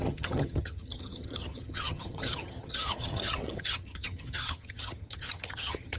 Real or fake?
fake